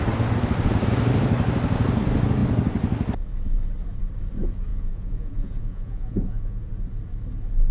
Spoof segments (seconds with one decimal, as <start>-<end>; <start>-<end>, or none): 4.7-6.7